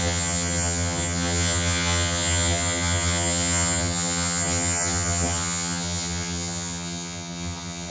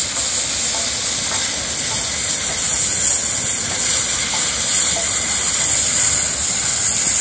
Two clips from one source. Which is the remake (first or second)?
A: first